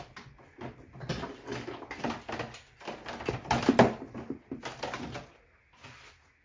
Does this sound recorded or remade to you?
recorded